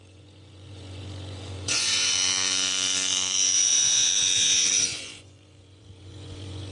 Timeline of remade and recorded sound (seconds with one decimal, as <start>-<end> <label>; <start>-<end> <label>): 0.0-6.7 remade